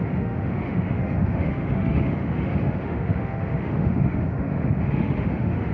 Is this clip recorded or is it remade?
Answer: remade